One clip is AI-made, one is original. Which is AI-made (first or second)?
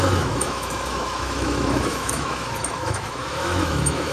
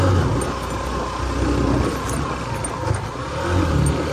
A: first